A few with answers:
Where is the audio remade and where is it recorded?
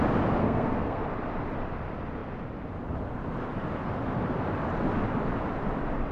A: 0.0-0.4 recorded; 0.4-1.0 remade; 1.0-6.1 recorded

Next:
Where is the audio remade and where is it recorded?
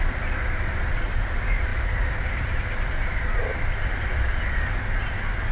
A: 0.0-5.5 recorded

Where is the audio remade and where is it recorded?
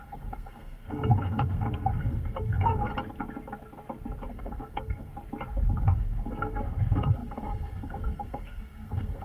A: 0.0-2.9 remade; 2.9-4.3 recorded; 4.3-5.1 remade; 5.1-5.8 recorded; 5.8-9.2 remade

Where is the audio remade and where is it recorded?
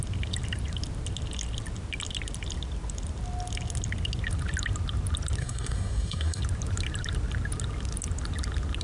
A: 0.0-5.4 recorded; 5.4-6.4 remade; 6.4-8.8 recorded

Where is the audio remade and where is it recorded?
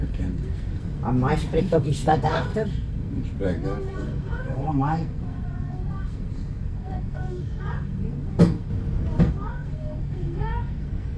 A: 0.0-1.0 remade; 1.0-1.6 recorded; 1.6-3.2 remade; 3.2-3.8 recorded; 3.8-8.7 remade; 8.7-9.2 recorded; 9.2-11.2 remade